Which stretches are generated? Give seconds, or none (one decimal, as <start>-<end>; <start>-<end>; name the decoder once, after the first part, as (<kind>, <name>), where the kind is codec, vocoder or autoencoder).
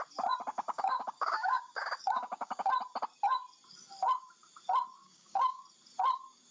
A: 0.5-2.7 (codec, DAC); 5.0-5.6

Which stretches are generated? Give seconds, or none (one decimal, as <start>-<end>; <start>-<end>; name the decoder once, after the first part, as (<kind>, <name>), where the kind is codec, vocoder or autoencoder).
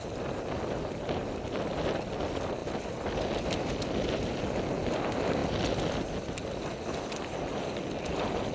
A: none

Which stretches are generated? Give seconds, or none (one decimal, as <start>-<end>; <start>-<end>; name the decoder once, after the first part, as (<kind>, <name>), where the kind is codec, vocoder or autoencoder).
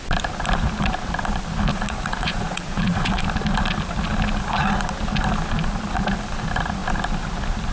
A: 1.7-3.2 (vocoder, Vocos)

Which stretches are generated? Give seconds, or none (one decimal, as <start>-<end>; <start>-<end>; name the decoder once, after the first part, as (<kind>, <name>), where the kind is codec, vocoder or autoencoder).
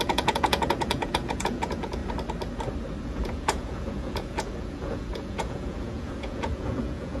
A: 0.0-2.0 (vocoder, Vocos); 3.0-7.2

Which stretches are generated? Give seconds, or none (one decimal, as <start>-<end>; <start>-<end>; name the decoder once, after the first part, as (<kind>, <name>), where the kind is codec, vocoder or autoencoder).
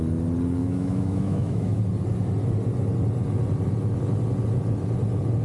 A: 0.6-1.8 (autoencoder, DAC-VAE)